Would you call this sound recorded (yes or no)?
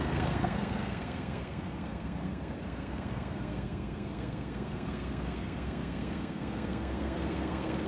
no